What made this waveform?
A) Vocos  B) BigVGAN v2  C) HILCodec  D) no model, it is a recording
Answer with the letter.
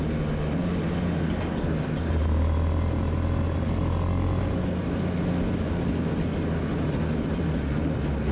D